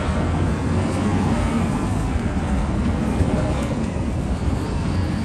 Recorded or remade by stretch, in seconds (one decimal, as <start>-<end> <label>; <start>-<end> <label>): 0.0-5.2 remade